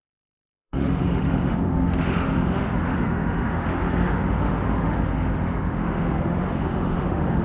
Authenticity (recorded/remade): remade